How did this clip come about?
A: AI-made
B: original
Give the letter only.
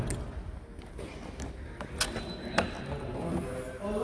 B